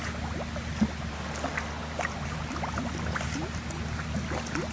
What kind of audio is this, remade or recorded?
recorded